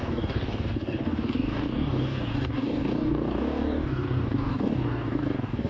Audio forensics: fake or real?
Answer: fake